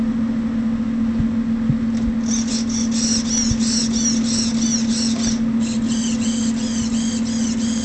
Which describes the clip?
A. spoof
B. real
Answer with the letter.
B